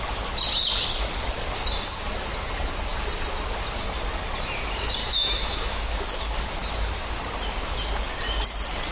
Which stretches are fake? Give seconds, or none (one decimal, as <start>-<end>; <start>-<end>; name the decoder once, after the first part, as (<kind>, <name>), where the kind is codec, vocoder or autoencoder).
5.0-5.9 (autoencoder, DAC-VAE)